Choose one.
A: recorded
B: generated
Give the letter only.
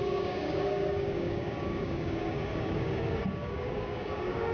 B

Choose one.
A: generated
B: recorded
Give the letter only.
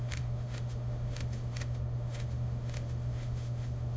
A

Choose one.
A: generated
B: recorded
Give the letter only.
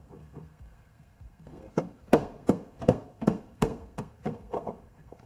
A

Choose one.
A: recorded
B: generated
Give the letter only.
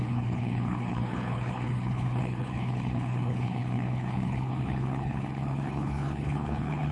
B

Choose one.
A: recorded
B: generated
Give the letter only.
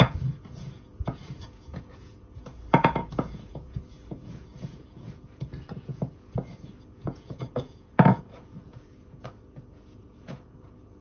B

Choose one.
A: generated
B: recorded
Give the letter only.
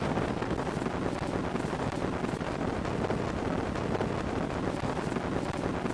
B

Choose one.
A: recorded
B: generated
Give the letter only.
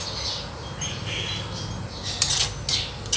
A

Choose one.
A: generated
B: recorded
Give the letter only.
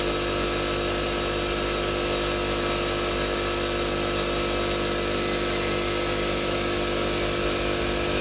B